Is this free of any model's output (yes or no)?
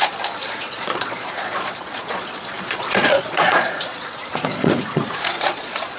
no